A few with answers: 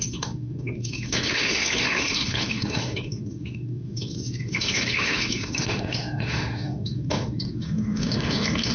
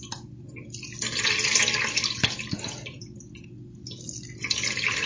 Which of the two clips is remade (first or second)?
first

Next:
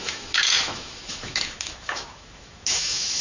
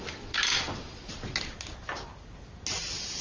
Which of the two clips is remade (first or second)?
first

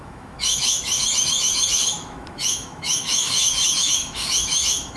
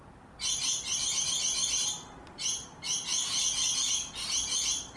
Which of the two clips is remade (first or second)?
first